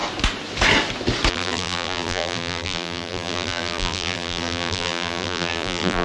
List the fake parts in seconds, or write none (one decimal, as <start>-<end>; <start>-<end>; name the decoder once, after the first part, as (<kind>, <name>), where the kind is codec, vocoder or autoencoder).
1.3-6.0 (vocoder, BigVGAN v2)